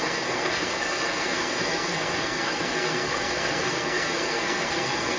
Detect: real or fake fake